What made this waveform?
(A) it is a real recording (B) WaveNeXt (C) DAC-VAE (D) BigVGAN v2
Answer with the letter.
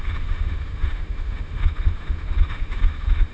C